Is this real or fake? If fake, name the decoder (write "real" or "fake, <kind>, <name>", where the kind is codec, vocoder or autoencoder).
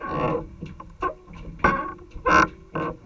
real